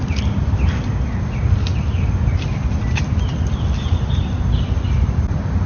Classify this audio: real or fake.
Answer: real